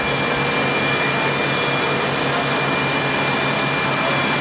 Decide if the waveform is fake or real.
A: real